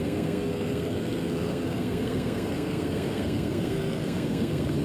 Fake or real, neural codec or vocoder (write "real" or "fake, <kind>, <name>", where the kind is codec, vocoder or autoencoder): fake, codec, SNAC